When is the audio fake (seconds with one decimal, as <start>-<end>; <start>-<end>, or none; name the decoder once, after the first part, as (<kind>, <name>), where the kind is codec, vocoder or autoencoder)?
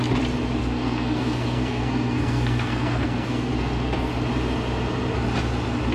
0.6-4.1 (codec, SNAC)